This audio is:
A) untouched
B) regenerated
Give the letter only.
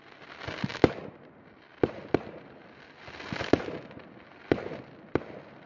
A